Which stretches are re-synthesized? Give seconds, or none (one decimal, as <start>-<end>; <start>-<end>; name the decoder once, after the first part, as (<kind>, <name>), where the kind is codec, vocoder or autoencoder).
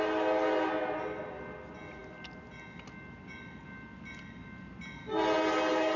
none